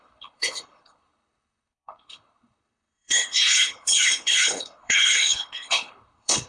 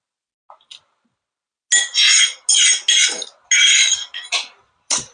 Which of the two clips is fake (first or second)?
first